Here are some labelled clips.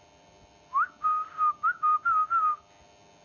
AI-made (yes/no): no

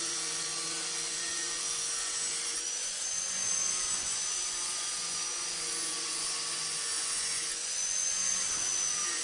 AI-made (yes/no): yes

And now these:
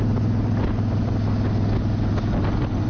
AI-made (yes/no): no